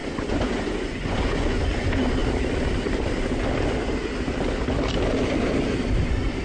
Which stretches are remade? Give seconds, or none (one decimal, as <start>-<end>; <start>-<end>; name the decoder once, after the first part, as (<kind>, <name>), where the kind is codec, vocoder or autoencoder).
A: 0.0-1.7 (vocoder, Vocos)